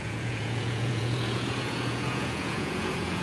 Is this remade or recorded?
remade